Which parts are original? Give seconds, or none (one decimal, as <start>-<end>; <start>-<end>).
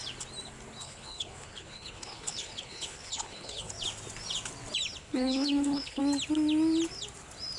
0.0-0.8; 3.7-5.0; 6.0-7.6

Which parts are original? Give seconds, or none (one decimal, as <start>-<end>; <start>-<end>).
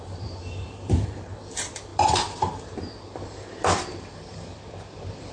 none